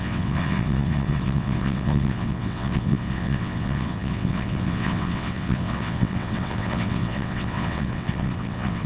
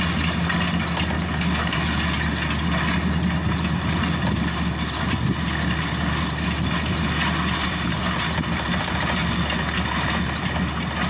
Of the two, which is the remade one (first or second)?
first